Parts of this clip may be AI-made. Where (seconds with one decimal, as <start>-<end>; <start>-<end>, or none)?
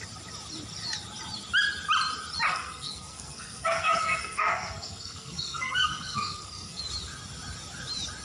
2.5-6.8